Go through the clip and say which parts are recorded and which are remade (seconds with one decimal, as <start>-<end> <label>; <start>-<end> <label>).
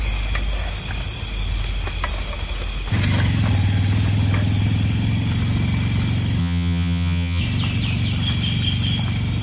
0.0-6.4 recorded; 6.4-7.4 remade; 7.4-9.4 recorded